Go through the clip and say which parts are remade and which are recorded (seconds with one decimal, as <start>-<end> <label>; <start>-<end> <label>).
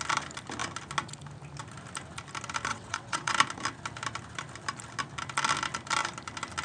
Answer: 0.0-2.7 recorded; 2.7-3.3 remade; 3.3-6.6 recorded